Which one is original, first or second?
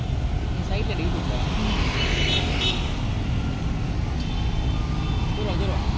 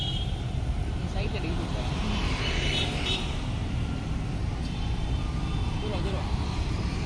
first